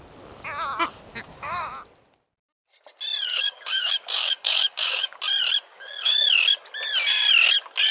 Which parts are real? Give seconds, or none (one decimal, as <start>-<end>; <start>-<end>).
0.0-1.1; 1.7-3.3; 5.2-5.7; 6.7-7.9